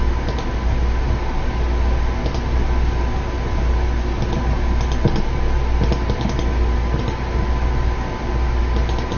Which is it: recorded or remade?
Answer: recorded